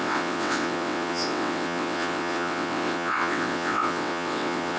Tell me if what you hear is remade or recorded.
remade